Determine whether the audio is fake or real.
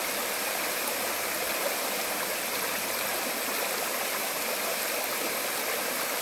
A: real